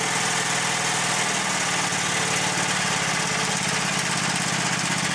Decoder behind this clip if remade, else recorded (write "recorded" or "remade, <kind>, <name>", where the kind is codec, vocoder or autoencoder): recorded